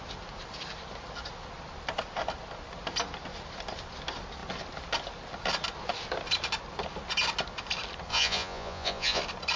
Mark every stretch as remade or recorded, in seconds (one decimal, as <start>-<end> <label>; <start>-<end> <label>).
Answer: 0.0-8.1 recorded; 8.1-9.2 remade; 9.2-9.6 recorded